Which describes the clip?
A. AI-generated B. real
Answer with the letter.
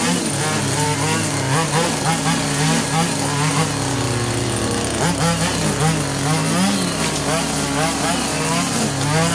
B